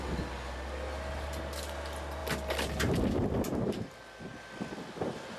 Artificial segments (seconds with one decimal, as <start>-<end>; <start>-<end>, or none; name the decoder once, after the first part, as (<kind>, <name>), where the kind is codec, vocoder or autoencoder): none